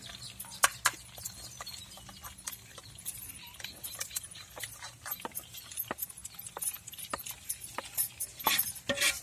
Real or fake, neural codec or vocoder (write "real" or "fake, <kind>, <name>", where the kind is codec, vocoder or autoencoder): real